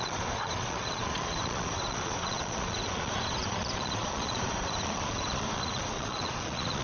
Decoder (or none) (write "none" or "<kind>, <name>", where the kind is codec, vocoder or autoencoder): vocoder, Vocos